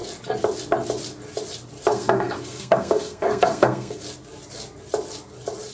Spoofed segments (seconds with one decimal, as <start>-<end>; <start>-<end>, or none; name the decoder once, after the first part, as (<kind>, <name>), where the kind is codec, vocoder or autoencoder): 1.9-4.0 (codec, SNAC)